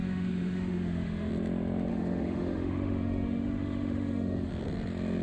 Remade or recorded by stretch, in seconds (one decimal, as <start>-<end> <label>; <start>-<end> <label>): 0.0-1.3 remade; 1.3-1.9 recorded; 1.9-4.5 remade; 4.5-5.2 recorded